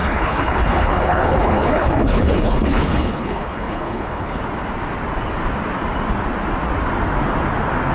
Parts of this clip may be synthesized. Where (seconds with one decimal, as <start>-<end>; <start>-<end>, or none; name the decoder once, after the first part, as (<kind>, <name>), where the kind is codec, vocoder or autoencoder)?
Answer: 0.0-4.4 (codec, HILCodec)